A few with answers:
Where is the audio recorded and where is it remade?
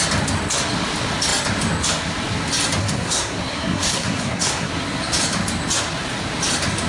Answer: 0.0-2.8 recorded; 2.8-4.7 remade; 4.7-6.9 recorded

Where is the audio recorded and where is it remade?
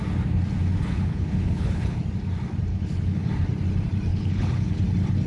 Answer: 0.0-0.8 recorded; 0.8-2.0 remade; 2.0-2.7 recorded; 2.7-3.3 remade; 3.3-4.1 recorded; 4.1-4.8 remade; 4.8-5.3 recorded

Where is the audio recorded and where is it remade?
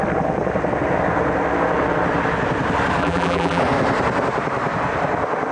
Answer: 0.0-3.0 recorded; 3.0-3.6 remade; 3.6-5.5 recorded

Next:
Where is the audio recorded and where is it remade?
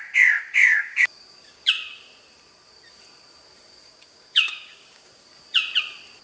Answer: 0.0-0.6 recorded; 0.6-1.7 remade; 1.7-3.8 recorded; 3.8-5.1 remade; 5.1-6.2 recorded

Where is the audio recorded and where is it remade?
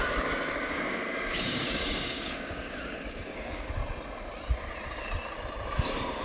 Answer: 0.0-3.7 remade; 3.7-6.2 recorded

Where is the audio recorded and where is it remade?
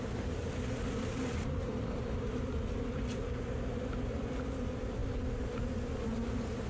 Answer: 0.0-0.4 recorded; 0.4-3.0 remade; 3.0-6.7 recorded